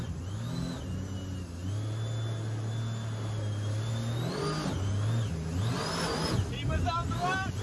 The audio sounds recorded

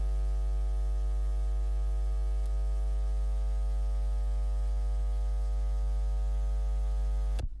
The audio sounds recorded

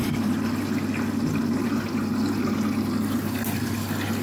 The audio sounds recorded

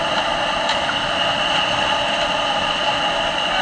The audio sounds recorded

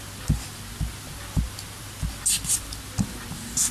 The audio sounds recorded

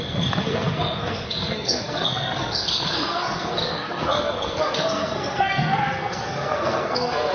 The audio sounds remade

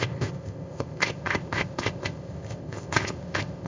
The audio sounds remade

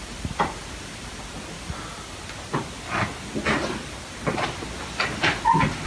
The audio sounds recorded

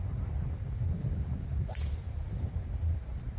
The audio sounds remade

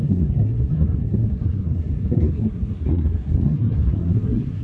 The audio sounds remade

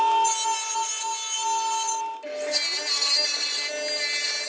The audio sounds recorded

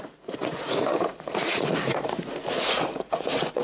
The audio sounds remade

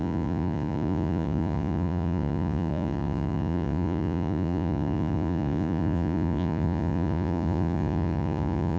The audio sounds remade